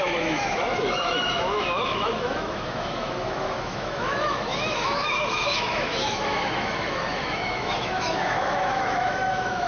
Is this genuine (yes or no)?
no